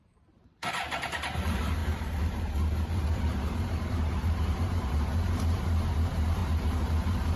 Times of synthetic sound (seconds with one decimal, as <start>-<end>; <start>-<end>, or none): 0.0-6.4; 7.0-7.4